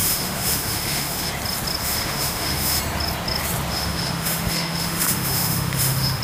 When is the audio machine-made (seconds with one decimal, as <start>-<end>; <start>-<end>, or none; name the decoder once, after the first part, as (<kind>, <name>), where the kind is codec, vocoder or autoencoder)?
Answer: 0.0-1.3 (autoencoder, DAC-VAE); 1.8-2.8; 3.7-6.2